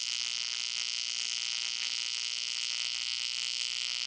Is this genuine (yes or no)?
yes